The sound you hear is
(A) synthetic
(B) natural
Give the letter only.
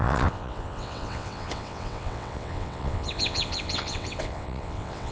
A